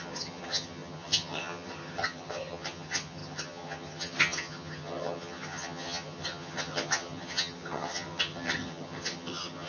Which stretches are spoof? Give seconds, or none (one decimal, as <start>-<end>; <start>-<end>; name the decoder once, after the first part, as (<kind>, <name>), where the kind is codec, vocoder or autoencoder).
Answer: 0.0-9.7 (vocoder, HiFi-GAN)